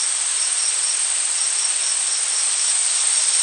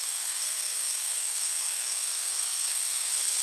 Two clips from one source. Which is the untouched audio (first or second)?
first